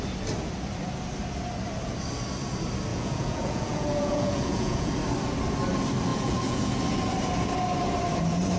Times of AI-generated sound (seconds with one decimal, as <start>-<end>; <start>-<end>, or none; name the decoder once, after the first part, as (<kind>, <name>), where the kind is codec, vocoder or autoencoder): 2.9-4.9 (vocoder, Vocos); 6.1-6.7